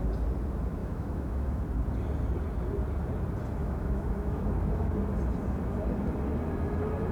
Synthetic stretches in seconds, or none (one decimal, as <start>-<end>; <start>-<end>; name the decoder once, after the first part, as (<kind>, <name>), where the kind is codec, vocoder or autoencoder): 0.8-1.6 (autoencoder, DAC-VAE); 3.6-4.9